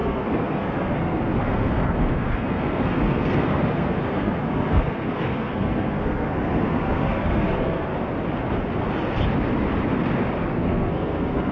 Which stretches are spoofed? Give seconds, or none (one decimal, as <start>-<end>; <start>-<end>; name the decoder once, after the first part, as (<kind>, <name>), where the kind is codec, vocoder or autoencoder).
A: 0.0-7.9 (codec, SNAC); 10.4-11.5